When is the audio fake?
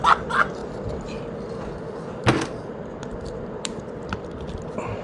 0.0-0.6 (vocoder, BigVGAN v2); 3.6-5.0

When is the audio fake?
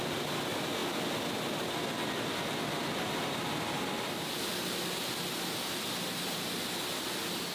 none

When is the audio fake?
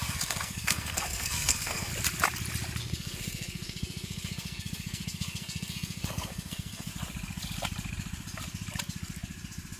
0.0-1.9 (codec, SNAC); 2.8-6.9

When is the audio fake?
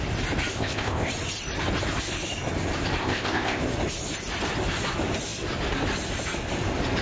0.5-1.1 (codec, ZipCodec); 3.0-3.6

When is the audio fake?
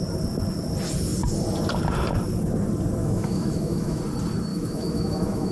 3.0-4.0 (autoencoder, DAC-VAE); 4.5-5.5